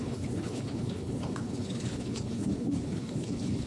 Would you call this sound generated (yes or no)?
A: yes